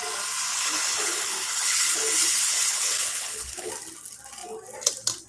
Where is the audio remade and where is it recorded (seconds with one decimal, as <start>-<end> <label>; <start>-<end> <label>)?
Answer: 0.0-0.5 recorded; 0.5-3.7 remade; 3.7-5.3 recorded